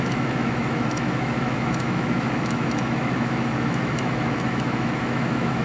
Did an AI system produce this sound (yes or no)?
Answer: yes